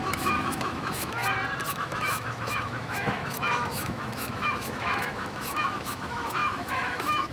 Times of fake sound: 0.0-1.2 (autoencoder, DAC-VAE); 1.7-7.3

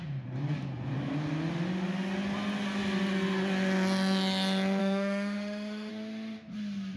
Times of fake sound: 4.8-5.9 (autoencoder, DAC-VAE)